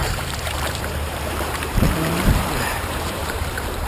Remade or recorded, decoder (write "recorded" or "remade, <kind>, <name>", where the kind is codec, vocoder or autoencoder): remade, vocoder, BigVGAN v2